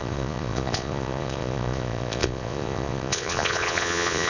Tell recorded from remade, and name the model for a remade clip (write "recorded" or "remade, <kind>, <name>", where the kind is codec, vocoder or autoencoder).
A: remade, vocoder, Vocos